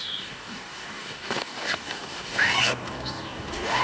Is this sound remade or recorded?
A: remade